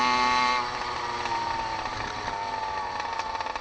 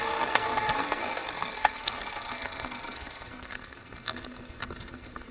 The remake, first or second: second